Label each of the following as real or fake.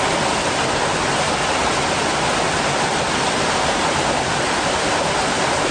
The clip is real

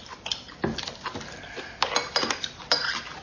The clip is real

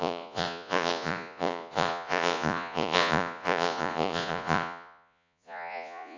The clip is fake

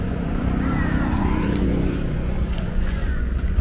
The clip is fake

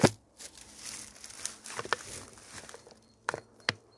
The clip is real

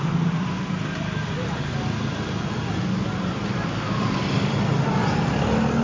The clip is real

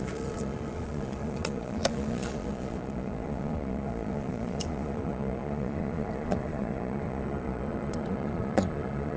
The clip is fake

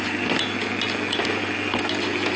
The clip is real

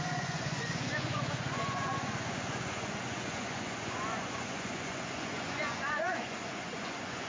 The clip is fake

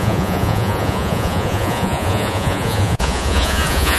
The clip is fake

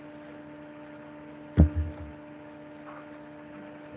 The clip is real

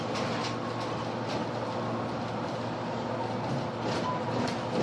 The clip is real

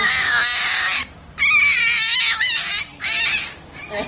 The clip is real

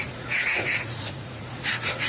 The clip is fake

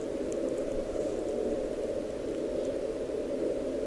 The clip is real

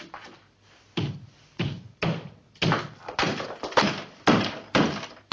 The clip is real